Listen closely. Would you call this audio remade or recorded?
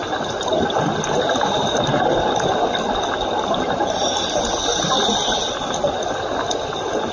recorded